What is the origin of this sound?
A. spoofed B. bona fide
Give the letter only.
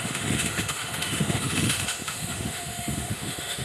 A